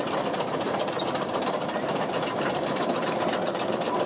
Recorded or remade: remade